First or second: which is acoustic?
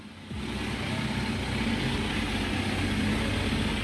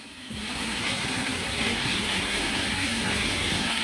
first